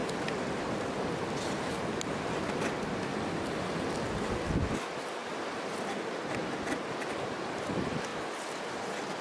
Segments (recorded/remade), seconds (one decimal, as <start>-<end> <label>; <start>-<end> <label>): 0.0-9.2 recorded